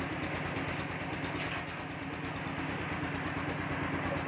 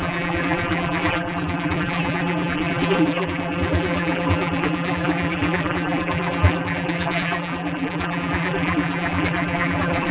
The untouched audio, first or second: first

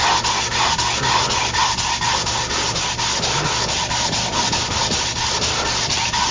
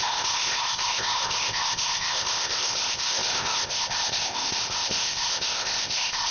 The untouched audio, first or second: first